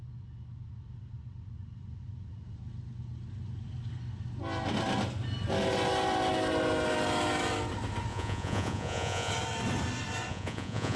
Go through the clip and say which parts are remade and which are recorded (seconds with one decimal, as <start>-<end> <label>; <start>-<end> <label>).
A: 0.0-8.1 recorded; 8.1-9.3 remade; 9.3-10.3 recorded; 10.3-11.0 remade